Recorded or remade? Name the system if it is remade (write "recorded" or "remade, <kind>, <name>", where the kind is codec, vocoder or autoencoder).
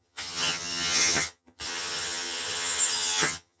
remade, vocoder, HiFi-GAN